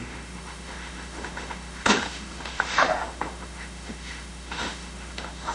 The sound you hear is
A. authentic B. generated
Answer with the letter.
B